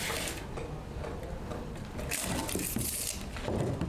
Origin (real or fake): real